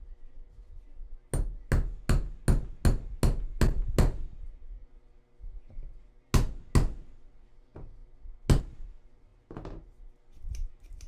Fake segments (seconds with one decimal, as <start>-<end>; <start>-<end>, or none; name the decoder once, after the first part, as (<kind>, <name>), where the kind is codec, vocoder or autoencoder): none